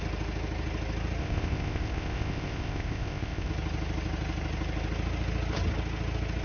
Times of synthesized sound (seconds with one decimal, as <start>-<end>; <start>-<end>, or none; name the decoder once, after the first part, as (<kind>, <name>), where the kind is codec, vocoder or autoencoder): 1.2-3.5 (codec, ZipCodec)